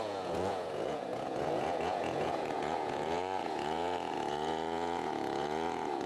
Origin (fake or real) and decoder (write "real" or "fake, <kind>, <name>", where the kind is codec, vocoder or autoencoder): fake, vocoder, Vocos